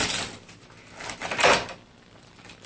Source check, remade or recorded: recorded